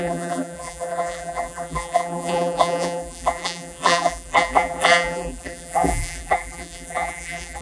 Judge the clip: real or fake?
fake